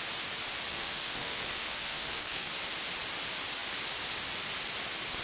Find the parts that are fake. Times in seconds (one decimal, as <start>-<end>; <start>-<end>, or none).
0.7-2.5